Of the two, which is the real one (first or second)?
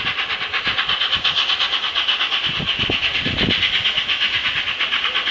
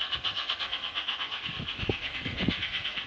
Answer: first